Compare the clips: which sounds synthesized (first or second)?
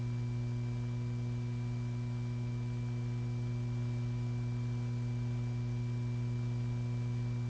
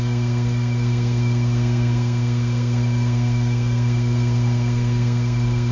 second